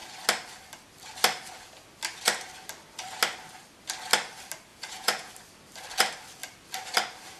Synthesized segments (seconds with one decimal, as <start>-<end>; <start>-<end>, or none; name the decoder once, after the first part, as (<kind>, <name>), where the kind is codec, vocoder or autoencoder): 4.7-5.3 (vocoder, Vocos)